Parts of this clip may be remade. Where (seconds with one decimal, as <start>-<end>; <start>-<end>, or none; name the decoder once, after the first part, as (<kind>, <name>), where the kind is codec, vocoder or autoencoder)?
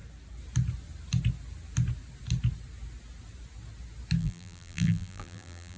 4.2-5.8 (vocoder, BigVGAN v2)